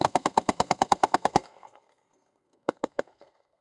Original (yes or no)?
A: no